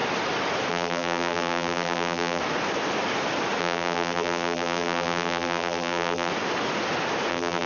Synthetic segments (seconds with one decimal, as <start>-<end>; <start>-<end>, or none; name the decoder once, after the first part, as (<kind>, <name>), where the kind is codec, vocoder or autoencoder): 0.7-2.4 (vocoder, BigVGAN v2); 3.6-6.3; 7.3-7.7

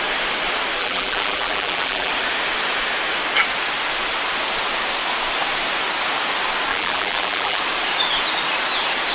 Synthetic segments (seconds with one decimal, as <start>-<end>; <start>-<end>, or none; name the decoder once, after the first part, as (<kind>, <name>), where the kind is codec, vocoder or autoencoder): 0.8-2.1 (vocoder, BigVGAN v2); 6.7-7.6